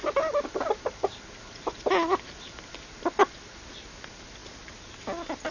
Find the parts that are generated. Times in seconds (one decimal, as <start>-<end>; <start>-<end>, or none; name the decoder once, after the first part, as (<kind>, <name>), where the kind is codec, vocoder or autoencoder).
none